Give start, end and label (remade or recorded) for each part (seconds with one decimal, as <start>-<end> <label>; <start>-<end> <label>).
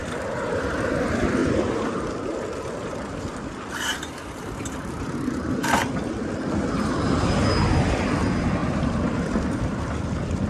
0.0-1.4 recorded; 1.4-5.5 remade; 5.5-8.6 recorded; 8.6-9.9 remade; 9.9-10.5 recorded